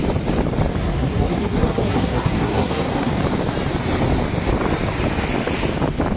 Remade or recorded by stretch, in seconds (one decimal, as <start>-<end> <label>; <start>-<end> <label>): 0.0-0.8 recorded; 0.8-3.1 remade; 3.1-6.2 recorded

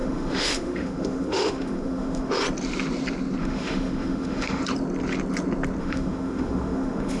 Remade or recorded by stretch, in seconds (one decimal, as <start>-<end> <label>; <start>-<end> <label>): 0.0-2.3 remade; 2.3-3.4 recorded; 3.4-4.6 remade; 4.6-5.8 recorded; 5.8-7.2 remade

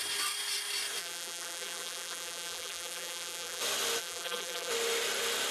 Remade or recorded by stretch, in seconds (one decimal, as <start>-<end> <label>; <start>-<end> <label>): 0.0-1.0 recorded; 1.0-3.6 remade; 3.6-4.0 recorded; 4.0-4.7 remade; 4.7-5.5 recorded

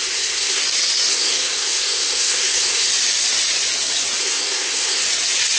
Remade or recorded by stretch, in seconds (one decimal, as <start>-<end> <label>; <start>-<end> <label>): 0.0-0.6 remade; 0.6-1.1 recorded; 1.1-2.9 remade; 2.9-4.2 recorded; 4.2-5.0 remade; 5.0-5.6 recorded

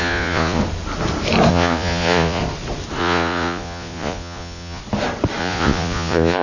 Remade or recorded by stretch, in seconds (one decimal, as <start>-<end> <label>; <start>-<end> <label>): 0.0-0.6 remade; 0.6-1.5 recorded; 1.5-2.4 remade; 2.4-3.0 recorded; 3.0-4.8 remade; 4.8-5.4 recorded; 5.4-6.4 remade

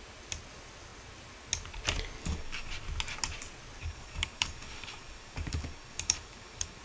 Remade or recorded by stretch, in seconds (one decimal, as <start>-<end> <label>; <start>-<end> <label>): 0.0-2.2 recorded; 2.2-2.7 remade; 2.7-3.8 recorded; 3.8-6.8 remade

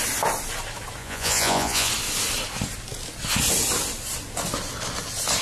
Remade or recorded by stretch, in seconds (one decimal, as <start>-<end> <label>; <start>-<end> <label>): 0.0-1.0 recorded; 1.0-1.9 remade; 1.9-5.4 recorded